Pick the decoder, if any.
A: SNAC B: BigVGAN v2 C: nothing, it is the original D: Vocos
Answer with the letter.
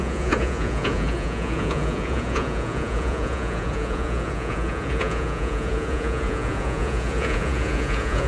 D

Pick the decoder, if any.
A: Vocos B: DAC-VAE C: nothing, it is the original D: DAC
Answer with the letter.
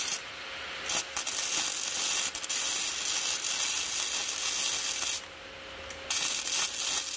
C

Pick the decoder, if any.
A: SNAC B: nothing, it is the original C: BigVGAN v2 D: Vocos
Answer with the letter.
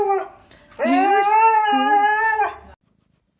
B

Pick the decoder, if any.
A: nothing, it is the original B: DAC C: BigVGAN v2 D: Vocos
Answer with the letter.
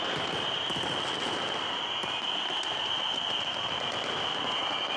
A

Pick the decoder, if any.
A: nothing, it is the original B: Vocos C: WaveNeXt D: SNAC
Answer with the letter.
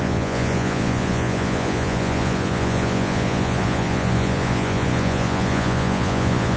B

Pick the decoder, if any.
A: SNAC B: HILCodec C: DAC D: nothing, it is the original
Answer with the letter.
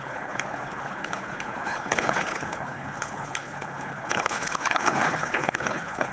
B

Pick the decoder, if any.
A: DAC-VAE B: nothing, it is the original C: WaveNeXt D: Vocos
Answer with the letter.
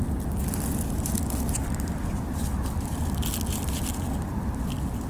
B